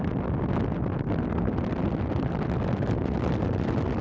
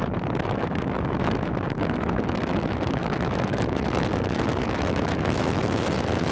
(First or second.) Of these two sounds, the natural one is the first